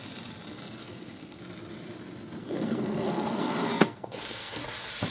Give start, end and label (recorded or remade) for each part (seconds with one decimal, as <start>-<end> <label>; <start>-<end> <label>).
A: 0.0-0.8 recorded; 0.8-1.4 remade; 1.4-2.4 recorded; 2.4-4.6 remade; 4.6-5.1 recorded